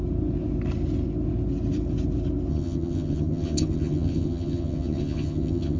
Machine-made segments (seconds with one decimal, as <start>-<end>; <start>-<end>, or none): 2.5-5.8